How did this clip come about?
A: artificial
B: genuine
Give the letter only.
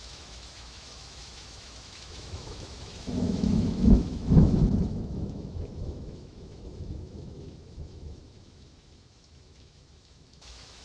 A